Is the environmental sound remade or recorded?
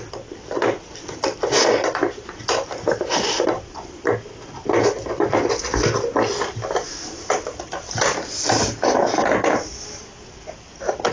recorded